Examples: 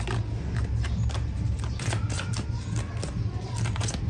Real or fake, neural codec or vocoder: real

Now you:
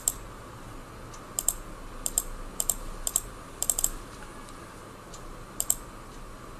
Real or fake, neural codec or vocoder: real